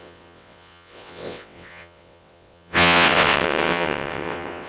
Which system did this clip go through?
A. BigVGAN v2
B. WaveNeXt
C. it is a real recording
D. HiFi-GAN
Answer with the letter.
B